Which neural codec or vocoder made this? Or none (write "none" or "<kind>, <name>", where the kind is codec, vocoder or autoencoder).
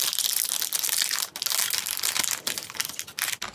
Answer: none